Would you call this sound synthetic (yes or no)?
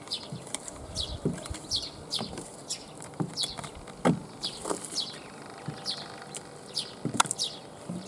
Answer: yes